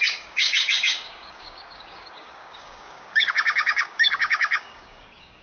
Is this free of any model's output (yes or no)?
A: no